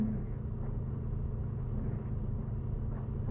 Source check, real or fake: real